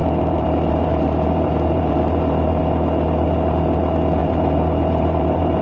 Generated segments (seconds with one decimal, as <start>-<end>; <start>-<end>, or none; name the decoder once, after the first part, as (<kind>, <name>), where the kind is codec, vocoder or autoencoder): 0.0-2.6 (vocoder, BigVGAN v2); 4.2-5.6